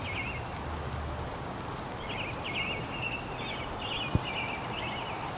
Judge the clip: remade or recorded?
recorded